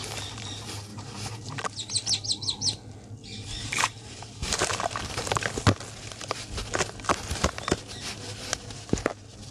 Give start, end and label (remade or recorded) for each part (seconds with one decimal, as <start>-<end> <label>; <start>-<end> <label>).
0.0-0.9 recorded; 0.9-1.6 remade; 1.6-3.2 recorded; 3.2-5.5 remade; 5.5-9.5 recorded